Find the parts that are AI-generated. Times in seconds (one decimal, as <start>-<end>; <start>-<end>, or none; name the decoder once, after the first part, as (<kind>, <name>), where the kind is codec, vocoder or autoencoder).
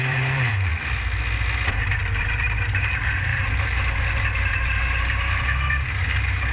0.0-0.7 (vocoder, BigVGAN v2); 2.2-6.5